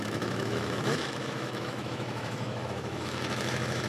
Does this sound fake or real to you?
fake